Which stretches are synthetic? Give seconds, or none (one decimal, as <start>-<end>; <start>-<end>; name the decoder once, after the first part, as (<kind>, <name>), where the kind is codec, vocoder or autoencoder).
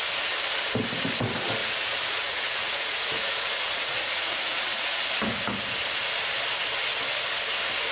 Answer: 1.6-5.1 (vocoder, Vocos)